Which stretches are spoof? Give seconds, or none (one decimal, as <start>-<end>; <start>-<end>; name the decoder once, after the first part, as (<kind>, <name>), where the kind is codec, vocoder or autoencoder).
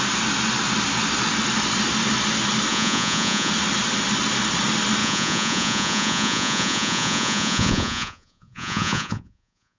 2.7-3.5 (vocoder, Vocos); 5.0-9.8